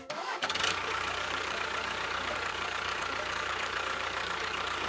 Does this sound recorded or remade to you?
remade